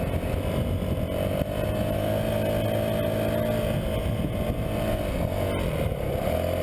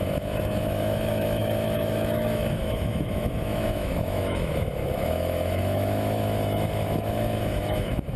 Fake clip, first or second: second